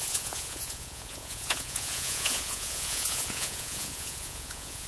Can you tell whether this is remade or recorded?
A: remade